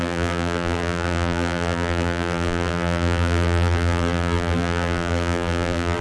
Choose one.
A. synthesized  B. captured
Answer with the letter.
A